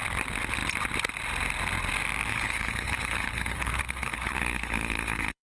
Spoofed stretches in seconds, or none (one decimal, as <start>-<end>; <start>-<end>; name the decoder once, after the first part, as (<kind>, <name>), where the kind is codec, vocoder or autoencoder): 2.3-5.5 (codec, HILCodec)